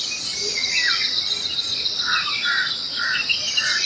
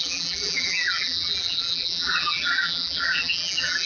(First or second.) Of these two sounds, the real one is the first